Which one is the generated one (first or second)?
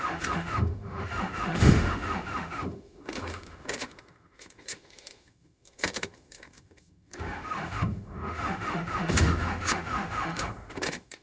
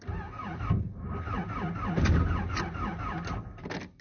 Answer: first